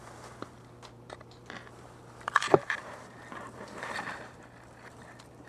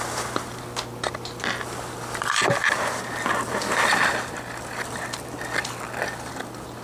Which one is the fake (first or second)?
first